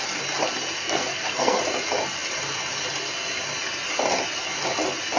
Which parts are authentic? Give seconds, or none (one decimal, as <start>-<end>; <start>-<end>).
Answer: 0.0-0.8; 1.6-5.2